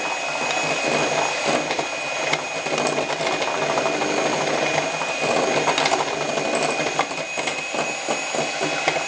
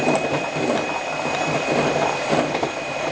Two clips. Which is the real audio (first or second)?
first